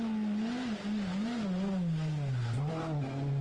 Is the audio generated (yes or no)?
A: no